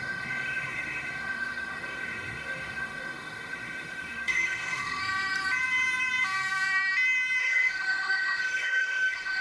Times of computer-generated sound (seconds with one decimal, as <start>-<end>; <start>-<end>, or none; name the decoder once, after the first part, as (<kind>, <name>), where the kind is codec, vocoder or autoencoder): 0.0-5.0 (autoencoder, DAC-VAE); 7.4-9.4